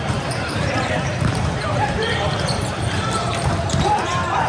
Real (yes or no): no